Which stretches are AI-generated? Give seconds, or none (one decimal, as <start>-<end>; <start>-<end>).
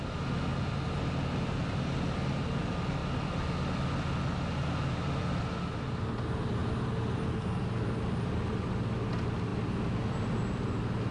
none